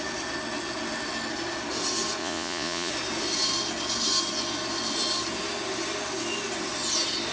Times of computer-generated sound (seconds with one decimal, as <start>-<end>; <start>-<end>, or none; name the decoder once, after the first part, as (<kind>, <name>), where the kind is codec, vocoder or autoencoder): 2.2-2.9 (vocoder, Vocos)